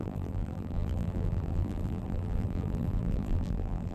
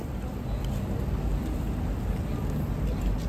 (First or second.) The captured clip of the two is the second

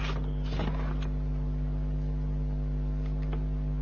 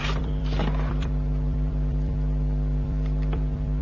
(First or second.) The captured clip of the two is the first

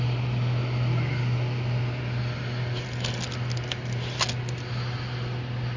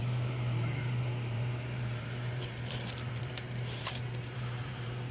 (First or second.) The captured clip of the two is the first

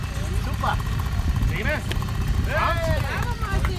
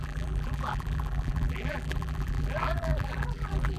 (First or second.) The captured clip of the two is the first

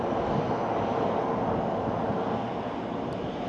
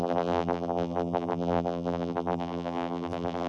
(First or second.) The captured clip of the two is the first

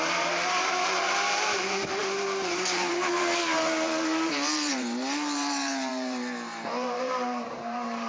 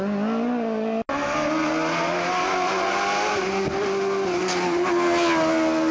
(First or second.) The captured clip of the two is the second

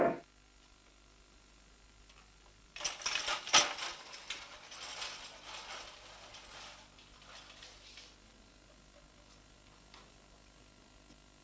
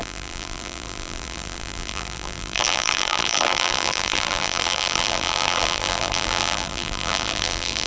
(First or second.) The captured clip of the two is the first